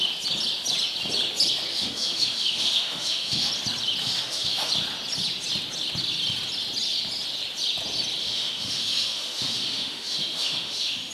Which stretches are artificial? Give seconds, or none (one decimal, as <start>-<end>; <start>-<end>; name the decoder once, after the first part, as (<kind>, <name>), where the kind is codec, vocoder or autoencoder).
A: 1.7-3.5 (autoencoder, DAC-VAE); 4.0-4.7; 8.2-11.1